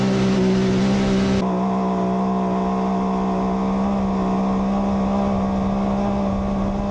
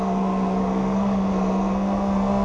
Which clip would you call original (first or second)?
first